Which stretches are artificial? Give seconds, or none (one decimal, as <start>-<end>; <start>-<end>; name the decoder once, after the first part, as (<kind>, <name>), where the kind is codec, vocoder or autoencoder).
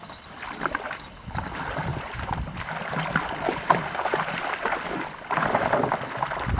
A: none